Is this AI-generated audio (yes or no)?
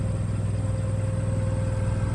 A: no